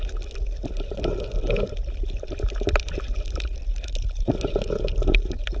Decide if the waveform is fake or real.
real